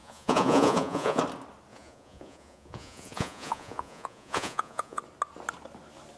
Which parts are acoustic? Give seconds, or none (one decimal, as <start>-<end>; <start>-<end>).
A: 1.2-1.7; 5.0-6.2